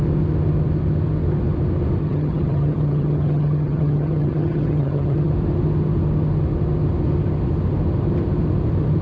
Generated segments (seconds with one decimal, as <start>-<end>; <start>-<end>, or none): 2.0-5.3